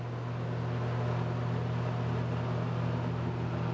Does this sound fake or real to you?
real